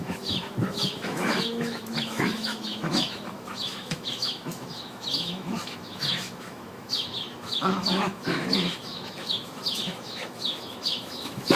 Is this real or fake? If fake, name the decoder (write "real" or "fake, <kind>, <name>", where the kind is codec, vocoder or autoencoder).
fake, autoencoder, DAC-VAE